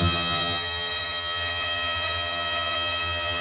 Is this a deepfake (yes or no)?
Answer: yes